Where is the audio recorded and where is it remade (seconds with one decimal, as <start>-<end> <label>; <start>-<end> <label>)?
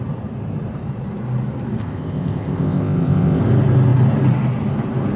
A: 0.0-1.8 recorded; 1.8-3.4 remade; 3.4-5.2 recorded